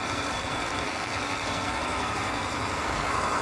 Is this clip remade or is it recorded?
remade